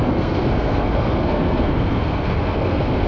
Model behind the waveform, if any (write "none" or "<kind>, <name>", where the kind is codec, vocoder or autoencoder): codec, SNAC